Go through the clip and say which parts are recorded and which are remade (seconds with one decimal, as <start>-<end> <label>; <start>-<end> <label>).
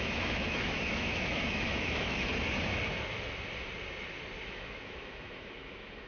0.0-2.3 remade; 2.3-4.4 recorded; 4.4-6.1 remade